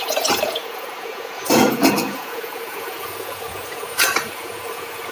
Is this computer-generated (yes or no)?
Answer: yes